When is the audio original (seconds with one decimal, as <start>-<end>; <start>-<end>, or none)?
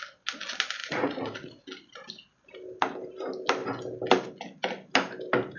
0.0-0.8; 1.6-5.6